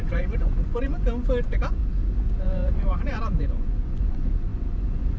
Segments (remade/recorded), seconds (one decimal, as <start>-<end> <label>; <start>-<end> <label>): 0.0-1.8 remade; 1.8-2.4 recorded; 2.4-5.2 remade